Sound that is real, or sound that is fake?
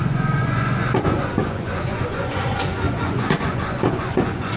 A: fake